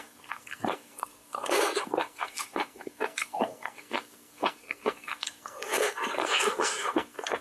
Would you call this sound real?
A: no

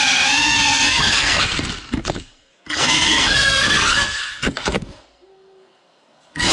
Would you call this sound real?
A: no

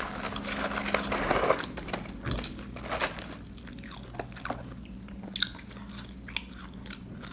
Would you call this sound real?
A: yes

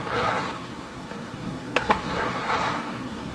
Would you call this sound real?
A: no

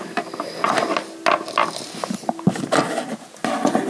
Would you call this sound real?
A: yes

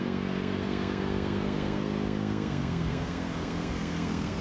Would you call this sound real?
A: no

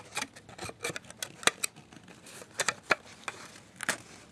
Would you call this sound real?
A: yes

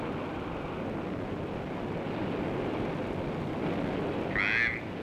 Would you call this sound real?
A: yes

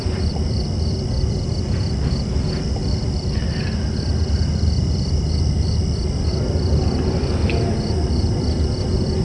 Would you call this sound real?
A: yes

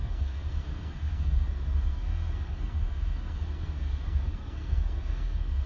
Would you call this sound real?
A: no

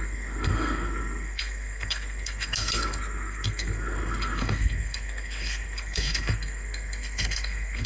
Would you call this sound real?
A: no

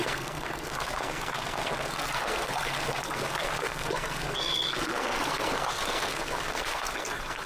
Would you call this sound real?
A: no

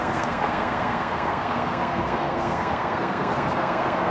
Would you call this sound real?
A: no